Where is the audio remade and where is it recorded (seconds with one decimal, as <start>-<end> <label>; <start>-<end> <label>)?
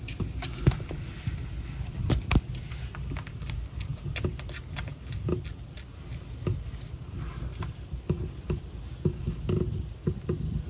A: 0.0-10.7 recorded